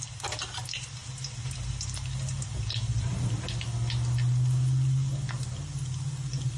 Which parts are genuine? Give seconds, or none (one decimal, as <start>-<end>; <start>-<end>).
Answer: 0.0-6.6